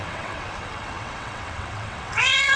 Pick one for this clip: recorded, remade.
remade